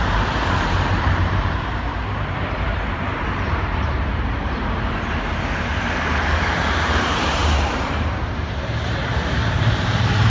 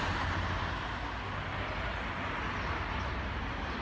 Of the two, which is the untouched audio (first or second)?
second